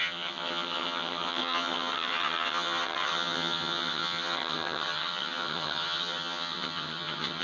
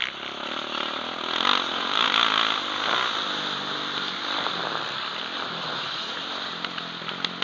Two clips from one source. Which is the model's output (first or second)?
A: first